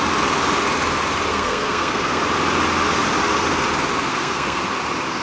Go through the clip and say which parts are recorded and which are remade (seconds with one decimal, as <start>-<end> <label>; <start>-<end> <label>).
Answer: 0.0-1.3 recorded; 1.3-2.2 remade; 2.2-4.1 recorded; 4.1-4.6 remade; 4.6-5.2 recorded